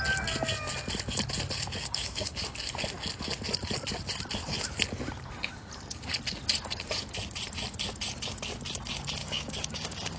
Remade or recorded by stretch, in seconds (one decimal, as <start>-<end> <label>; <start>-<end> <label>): 0.0-1.8 recorded; 1.8-2.4 remade; 2.4-9.2 recorded; 9.2-10.2 remade